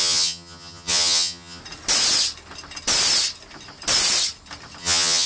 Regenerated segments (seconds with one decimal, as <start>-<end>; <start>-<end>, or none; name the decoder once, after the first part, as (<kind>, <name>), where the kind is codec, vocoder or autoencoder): 0.0-1.6 (vocoder, HiFi-GAN); 4.8-5.3